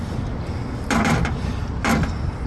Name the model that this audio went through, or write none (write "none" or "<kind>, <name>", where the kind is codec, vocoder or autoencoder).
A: none